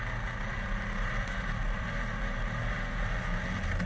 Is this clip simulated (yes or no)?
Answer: no